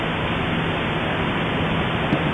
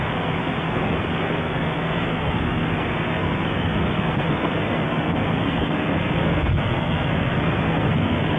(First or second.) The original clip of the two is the first